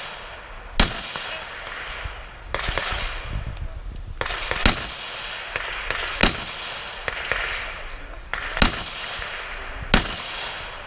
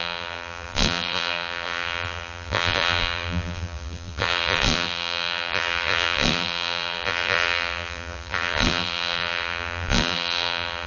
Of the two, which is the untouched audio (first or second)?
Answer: first